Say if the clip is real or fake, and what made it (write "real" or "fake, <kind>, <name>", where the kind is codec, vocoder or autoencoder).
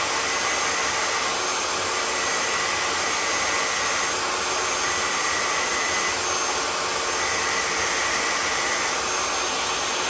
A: real